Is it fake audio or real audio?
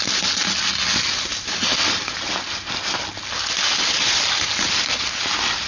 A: real